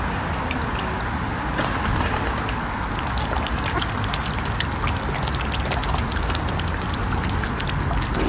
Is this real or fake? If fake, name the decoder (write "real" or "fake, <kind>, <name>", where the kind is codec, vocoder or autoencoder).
real